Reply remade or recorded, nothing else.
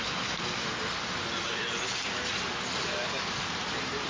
recorded